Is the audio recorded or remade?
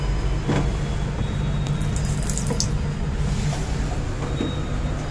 recorded